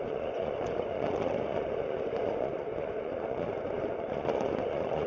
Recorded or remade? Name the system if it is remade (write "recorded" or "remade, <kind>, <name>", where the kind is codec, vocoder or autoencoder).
remade, vocoder, Vocos